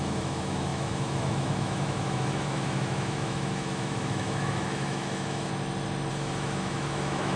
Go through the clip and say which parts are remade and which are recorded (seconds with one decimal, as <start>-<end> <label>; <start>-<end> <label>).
0.0-5.5 remade; 5.5-6.1 recorded; 6.1-7.4 remade